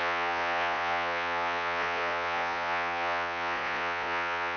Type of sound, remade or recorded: remade